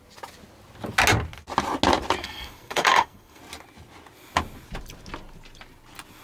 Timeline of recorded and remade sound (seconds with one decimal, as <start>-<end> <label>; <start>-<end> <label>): 0.0-2.2 recorded; 2.2-3.4 remade; 3.4-6.2 recorded